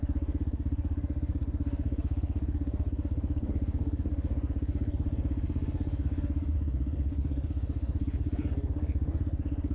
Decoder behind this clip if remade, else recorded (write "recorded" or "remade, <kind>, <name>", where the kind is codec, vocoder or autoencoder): remade, codec, SNAC